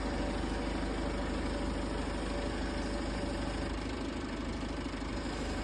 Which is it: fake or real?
real